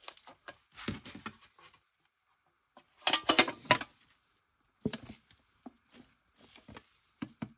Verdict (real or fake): real